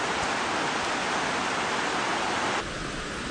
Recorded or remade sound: recorded